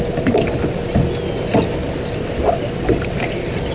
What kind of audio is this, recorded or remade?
recorded